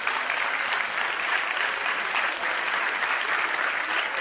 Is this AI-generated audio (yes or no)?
no